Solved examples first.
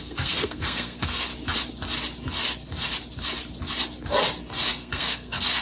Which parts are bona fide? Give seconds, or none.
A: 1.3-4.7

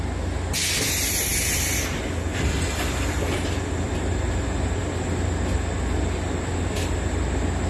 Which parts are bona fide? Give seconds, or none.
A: 0.0-7.7

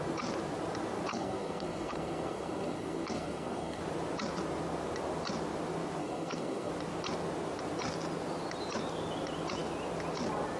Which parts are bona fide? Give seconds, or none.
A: 0.0-1.1; 3.8-6.0; 6.7-10.6